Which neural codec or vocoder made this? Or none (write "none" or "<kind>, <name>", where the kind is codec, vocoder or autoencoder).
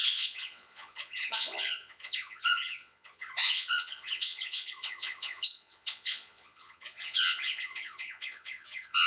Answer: vocoder, Vocos